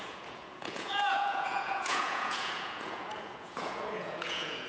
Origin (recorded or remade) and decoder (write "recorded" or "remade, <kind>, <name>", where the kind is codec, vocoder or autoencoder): remade, vocoder, Vocos